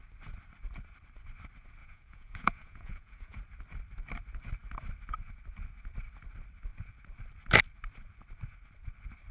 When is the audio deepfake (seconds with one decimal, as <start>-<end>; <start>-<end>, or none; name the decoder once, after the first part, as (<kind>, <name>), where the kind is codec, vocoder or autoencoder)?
1.8-3.4 (vocoder, Vocos)